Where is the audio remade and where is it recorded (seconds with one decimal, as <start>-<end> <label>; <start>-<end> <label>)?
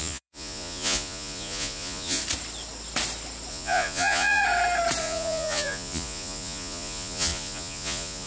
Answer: 0.0-2.2 remade; 2.2-3.5 recorded; 3.5-4.4 remade; 4.4-5.0 recorded; 5.0-8.3 remade